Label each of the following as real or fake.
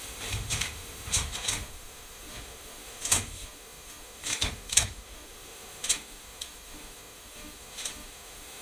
fake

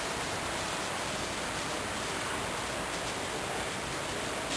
real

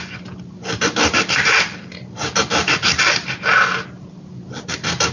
real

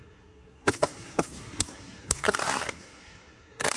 fake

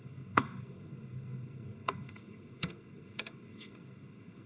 fake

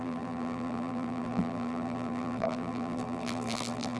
fake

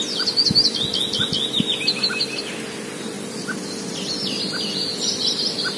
real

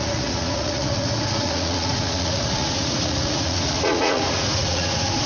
fake